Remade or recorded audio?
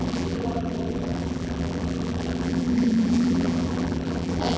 remade